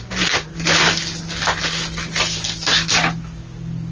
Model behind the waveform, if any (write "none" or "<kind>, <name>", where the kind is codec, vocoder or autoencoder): none